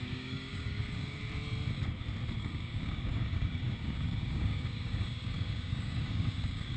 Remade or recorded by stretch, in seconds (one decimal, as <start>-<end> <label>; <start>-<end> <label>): 0.0-1.2 remade; 1.2-2.4 recorded; 2.4-6.8 remade